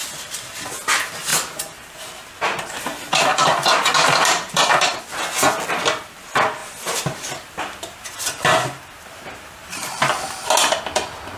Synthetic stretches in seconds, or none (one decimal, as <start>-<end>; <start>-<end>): 3.3-5.0; 6.6-10.1